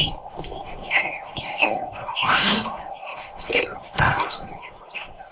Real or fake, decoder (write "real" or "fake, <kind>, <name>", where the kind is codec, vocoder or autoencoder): fake, codec, SNAC